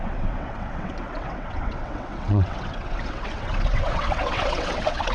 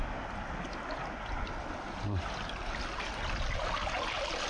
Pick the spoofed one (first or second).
first